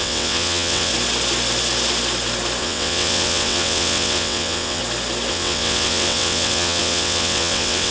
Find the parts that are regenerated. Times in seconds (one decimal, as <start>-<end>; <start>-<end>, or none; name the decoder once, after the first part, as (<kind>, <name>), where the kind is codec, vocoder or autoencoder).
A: 0.0-0.9 (vocoder, WaveNeXt); 2.6-4.8; 5.3-7.9